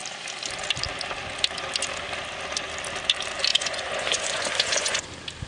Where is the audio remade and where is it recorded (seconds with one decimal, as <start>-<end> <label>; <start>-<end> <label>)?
0.0-3.5 recorded; 3.5-5.1 remade; 5.1-5.5 recorded